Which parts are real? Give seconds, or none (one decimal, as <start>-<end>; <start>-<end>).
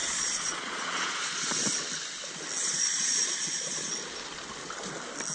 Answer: 1.7-2.7; 3.9-5.3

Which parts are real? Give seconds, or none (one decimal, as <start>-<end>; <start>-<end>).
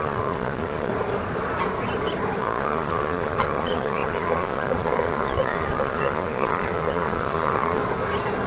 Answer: 0.9-2.4; 7.8-8.5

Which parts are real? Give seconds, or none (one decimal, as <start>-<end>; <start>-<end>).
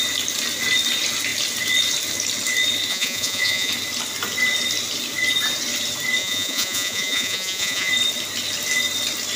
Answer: 0.0-2.9; 3.7-6.2; 7.9-9.4